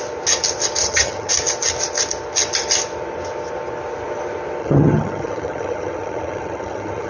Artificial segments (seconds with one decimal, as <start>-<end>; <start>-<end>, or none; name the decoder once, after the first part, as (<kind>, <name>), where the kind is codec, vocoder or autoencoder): 0.8-1.3 (vocoder, HiFi-GAN); 4.6-7.1

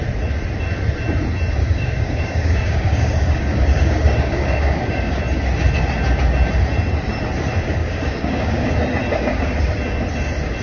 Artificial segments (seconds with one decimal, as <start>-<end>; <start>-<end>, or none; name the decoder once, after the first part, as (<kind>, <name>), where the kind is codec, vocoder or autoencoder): 1.6-5.2 (codec, DAC); 7.8-8.7; 9.1-9.6